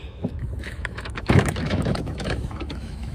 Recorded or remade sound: remade